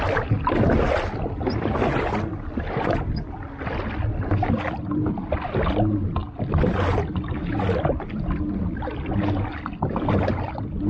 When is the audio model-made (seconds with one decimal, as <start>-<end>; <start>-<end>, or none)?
none